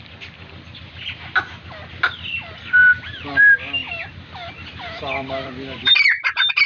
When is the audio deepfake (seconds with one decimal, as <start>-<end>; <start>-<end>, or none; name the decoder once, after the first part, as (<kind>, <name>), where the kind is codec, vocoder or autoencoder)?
none